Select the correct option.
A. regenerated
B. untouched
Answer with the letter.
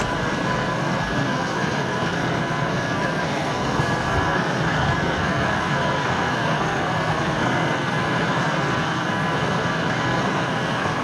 A